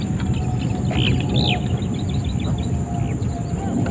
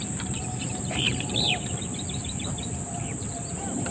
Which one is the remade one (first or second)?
second